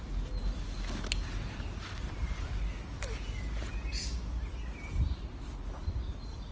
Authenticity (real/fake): real